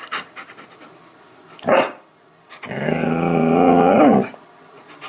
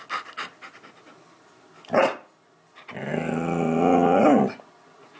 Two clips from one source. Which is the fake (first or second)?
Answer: first